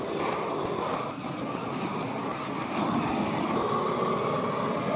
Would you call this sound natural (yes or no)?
yes